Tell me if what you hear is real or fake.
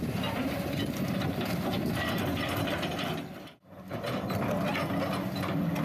real